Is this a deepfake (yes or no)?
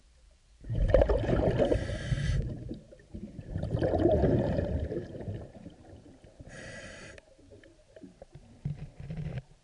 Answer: yes